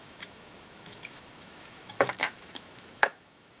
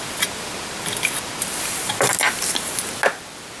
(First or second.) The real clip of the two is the second